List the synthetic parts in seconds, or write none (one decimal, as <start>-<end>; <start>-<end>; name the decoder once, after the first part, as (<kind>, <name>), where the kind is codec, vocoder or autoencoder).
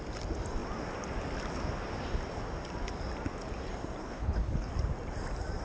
4.0-4.7 (codec, HILCodec)